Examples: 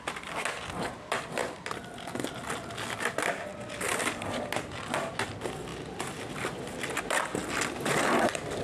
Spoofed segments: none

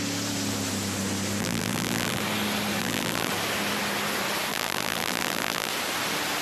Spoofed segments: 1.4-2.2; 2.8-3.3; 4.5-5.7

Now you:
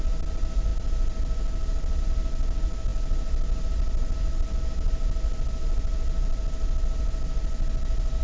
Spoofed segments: none

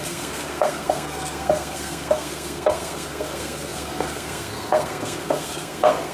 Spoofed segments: 0.0-6.1

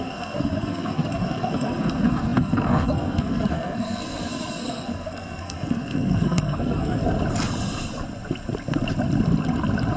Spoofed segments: 0.0-7.0

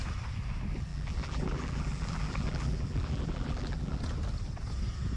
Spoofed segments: 0.9-4.0